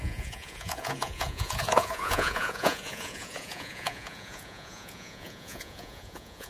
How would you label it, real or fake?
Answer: fake